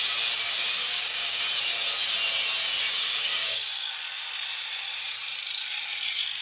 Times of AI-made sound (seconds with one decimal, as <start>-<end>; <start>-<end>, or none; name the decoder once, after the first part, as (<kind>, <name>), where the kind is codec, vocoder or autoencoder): 0.8-1.4 (codec, DAC); 2.9-3.9